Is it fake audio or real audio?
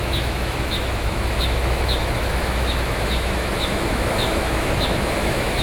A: fake